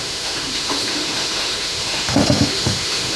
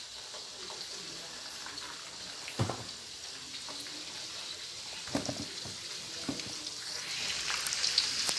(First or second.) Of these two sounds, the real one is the second